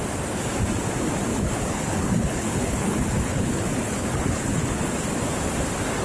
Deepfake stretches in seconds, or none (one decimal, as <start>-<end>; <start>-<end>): 1.3-4.9